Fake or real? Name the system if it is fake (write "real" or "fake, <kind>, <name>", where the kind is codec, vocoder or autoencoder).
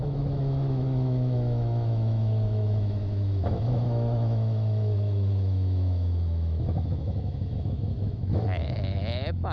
fake, autoencoder, DAC-VAE